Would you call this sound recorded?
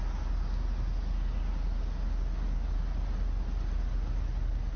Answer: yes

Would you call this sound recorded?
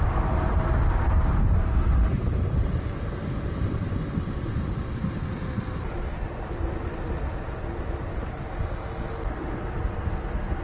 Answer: yes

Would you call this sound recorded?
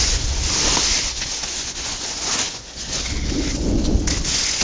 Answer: no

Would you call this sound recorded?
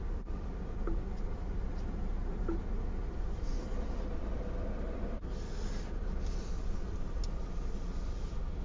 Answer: yes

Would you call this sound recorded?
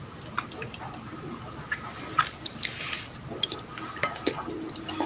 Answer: yes